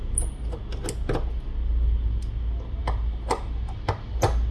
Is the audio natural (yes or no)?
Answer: yes